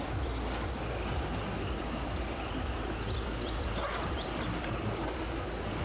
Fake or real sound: fake